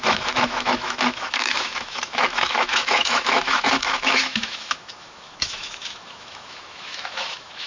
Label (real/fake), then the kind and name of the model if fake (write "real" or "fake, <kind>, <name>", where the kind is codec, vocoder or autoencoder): fake, autoencoder, DAC-VAE